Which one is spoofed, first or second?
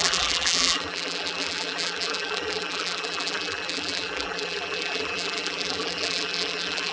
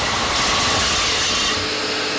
first